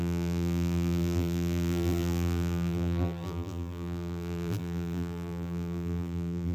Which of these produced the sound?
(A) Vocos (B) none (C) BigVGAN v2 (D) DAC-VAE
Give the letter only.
C